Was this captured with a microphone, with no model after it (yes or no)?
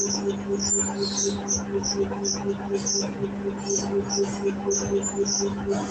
yes